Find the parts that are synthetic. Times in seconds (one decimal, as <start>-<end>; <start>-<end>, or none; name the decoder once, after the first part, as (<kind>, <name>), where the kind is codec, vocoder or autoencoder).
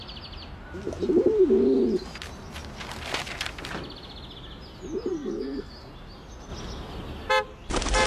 5.1-5.7 (codec, SNAC)